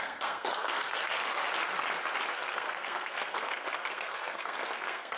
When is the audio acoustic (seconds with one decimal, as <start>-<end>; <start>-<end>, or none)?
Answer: 1.4-2.3